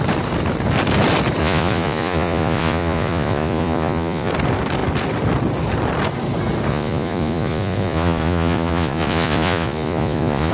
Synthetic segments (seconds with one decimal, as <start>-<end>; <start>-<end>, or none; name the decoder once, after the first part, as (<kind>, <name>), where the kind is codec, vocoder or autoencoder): 1.4-4.3 (vocoder, Vocos); 6.7-10.5